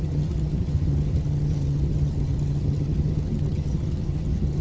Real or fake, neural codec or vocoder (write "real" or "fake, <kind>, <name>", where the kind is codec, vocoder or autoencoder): fake, vocoder, HiFi-GAN